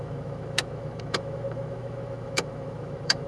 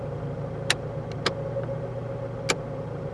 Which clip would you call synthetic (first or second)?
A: first